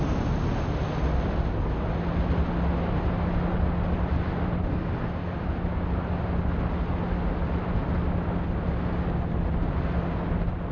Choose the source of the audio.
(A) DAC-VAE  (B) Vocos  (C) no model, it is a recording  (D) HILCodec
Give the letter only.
C